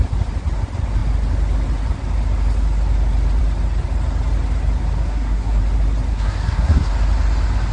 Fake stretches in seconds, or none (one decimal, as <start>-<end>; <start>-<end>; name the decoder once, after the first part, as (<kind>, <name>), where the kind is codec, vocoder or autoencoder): 5.0-5.6 (codec, SNAC); 6.1-6.9